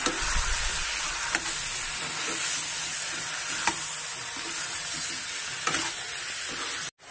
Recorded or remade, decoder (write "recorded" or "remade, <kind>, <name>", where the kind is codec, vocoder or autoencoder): recorded